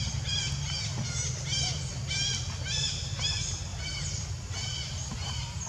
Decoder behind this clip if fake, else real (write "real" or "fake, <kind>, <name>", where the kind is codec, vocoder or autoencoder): real